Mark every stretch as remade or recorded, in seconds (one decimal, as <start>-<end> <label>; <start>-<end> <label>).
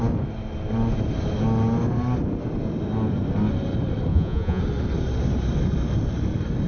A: 0.0-4.1 recorded; 4.1-4.6 remade; 4.6-6.7 recorded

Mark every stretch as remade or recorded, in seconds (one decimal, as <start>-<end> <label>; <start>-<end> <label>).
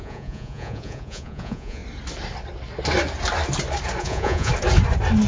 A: 0.0-1.8 remade; 1.8-4.0 recorded; 4.0-4.5 remade; 4.5-5.3 recorded